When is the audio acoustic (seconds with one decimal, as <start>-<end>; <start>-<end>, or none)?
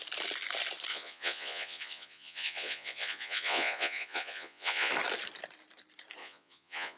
0.0-0.9; 4.9-6.2